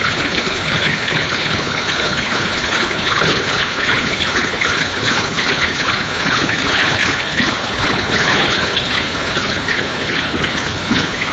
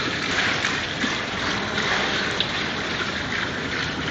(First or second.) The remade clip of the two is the first